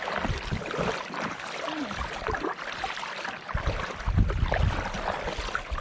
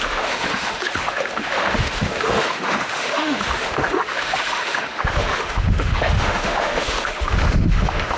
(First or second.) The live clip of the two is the first